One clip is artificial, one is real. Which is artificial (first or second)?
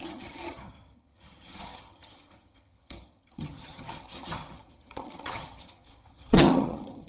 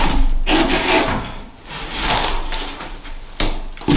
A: first